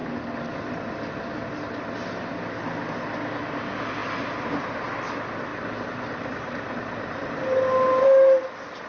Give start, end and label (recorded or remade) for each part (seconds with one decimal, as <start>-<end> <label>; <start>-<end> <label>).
0.0-5.5 recorded; 5.5-7.4 remade; 7.4-8.9 recorded